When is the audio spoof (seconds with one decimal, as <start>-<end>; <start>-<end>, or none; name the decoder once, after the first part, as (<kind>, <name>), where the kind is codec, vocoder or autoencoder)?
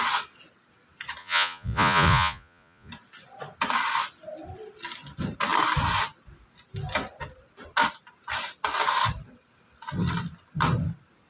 1.2-2.9 (vocoder, Vocos)